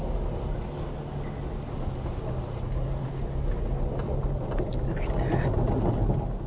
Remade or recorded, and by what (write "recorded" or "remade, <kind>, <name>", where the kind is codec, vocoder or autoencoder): recorded